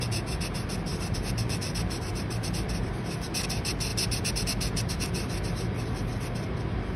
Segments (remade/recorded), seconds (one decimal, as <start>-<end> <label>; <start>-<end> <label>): 0.0-0.9 recorded; 0.9-3.0 remade; 3.0-7.0 recorded